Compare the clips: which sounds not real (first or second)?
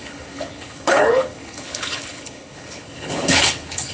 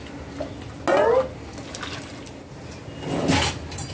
first